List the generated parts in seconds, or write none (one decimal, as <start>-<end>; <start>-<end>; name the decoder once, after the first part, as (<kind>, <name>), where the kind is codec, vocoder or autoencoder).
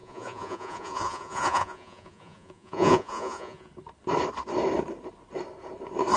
0.0-3.7 (vocoder, Vocos)